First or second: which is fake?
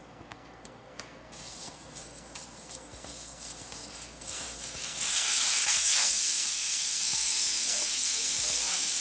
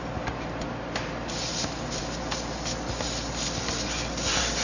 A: first